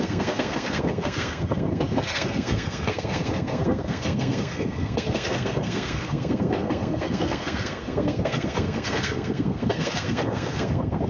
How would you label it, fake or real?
fake